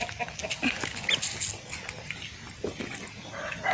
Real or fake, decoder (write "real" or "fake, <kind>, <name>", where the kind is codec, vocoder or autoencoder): real